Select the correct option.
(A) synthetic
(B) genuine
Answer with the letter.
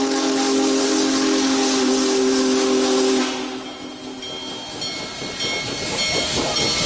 B